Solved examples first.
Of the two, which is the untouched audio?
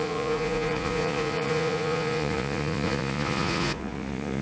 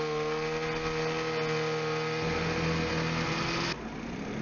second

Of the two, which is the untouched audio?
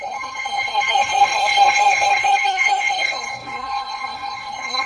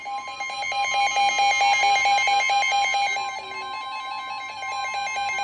second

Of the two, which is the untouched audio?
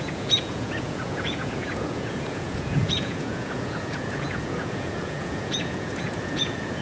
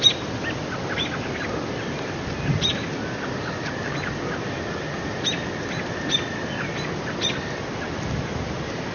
second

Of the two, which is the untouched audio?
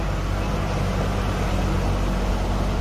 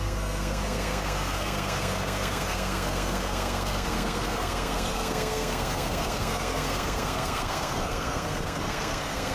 first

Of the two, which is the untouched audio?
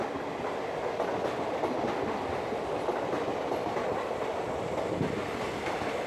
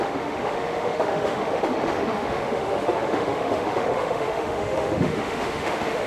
first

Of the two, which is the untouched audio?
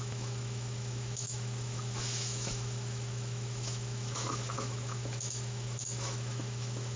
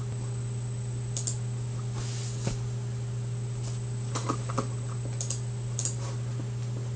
second